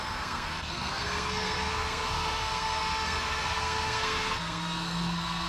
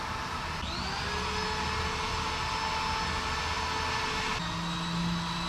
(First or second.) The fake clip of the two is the first